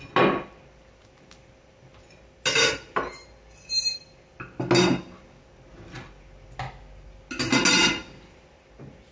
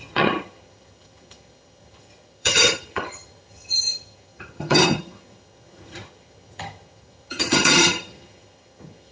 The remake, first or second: second